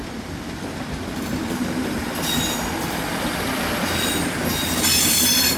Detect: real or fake real